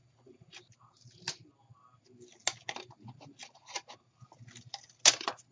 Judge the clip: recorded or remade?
recorded